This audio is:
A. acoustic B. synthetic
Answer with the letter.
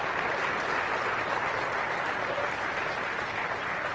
A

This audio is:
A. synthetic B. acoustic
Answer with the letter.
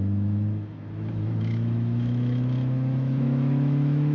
A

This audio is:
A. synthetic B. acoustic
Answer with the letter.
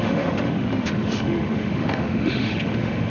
A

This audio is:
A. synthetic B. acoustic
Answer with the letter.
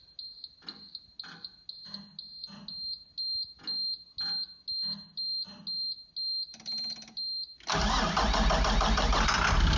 B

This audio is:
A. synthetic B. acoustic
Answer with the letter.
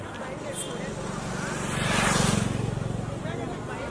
B